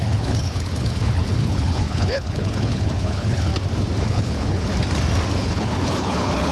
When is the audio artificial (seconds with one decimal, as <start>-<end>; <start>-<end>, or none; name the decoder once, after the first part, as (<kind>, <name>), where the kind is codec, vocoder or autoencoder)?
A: 0.0-3.5 (codec, HILCodec); 4.0-4.7; 5.4-6.5